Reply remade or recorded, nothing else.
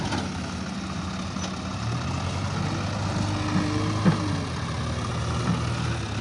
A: recorded